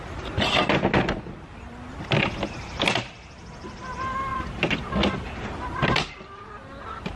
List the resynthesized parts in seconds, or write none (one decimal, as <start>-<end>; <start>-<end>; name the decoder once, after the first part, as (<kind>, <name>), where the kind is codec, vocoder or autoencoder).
none